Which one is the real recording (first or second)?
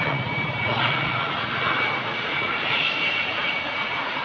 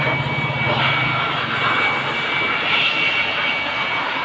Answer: second